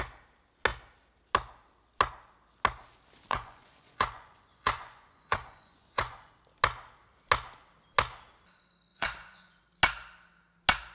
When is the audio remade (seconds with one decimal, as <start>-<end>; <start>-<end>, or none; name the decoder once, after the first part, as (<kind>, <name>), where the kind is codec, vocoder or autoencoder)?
3.3-6.3 (vocoder, Vocos); 8.9-9.6